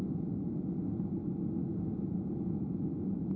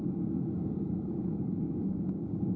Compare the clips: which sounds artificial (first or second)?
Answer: second